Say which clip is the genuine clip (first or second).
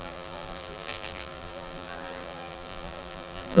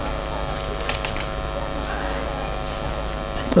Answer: second